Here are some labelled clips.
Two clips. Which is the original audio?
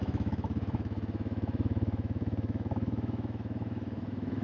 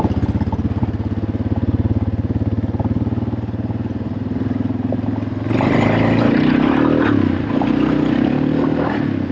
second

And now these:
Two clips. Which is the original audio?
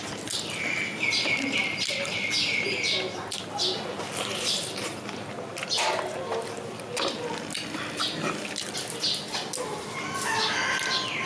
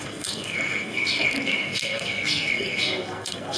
first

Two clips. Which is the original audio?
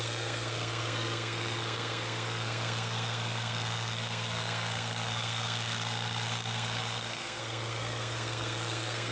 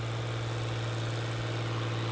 second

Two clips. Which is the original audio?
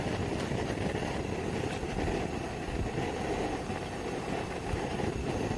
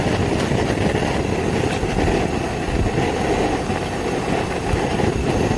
second